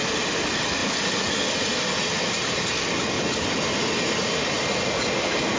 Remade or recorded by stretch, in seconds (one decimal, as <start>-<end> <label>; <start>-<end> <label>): 0.0-0.8 recorded; 0.8-1.4 remade; 1.4-2.1 recorded; 2.1-2.7 remade; 2.7-5.6 recorded